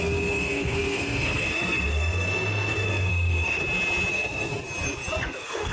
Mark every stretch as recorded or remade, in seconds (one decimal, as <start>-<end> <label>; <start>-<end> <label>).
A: 0.0-3.6 remade; 3.6-4.1 recorded; 4.1-4.5 remade; 4.5-5.2 recorded; 5.2-5.7 remade